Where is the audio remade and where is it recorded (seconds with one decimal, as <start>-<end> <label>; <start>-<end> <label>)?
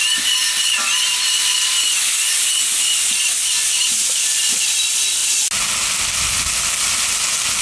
0.0-7.6 recorded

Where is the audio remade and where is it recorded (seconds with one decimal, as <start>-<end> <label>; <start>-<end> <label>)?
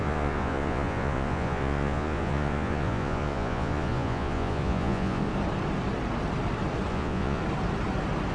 0.0-5.2 remade; 5.2-6.9 recorded; 6.9-7.4 remade; 7.4-8.3 recorded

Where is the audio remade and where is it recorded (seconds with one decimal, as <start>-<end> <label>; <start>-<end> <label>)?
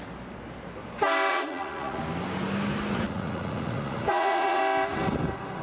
0.0-1.3 recorded; 1.3-2.0 remade; 2.0-2.9 recorded; 2.9-4.6 remade; 4.6-5.6 recorded